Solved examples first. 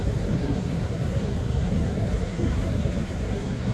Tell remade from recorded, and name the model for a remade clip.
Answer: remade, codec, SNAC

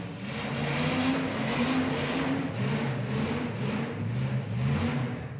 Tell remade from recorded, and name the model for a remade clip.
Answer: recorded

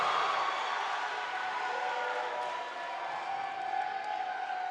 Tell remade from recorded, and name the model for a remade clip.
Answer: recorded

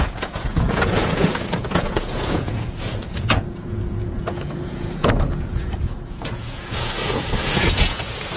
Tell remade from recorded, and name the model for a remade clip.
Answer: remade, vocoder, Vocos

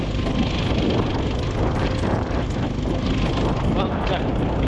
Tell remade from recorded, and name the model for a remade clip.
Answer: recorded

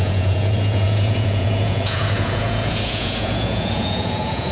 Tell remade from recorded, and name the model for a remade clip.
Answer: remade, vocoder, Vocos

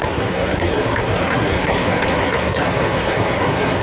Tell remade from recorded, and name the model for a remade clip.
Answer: remade, codec, SNAC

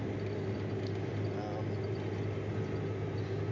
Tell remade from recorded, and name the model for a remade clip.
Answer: recorded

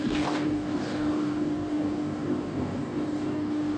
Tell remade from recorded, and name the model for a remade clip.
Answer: remade, codec, DAC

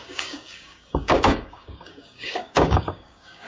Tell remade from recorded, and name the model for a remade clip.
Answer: remade, codec, DAC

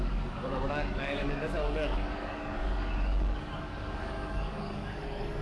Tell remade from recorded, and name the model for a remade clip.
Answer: remade, codec, DAC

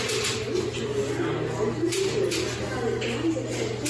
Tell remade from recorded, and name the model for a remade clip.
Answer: recorded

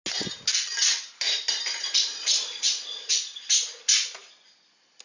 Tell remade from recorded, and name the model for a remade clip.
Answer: recorded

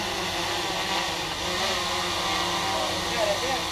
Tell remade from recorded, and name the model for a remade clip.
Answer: recorded